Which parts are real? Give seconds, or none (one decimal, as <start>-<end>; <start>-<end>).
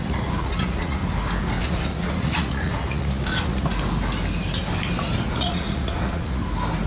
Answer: 1.0-1.6; 3.7-5.2; 6.4-6.9